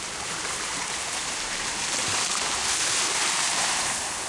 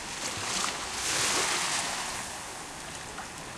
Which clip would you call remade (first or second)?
first